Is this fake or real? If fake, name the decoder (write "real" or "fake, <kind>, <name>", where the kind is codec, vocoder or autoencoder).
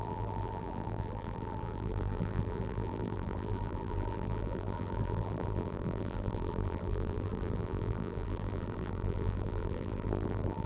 fake, vocoder, BigVGAN v2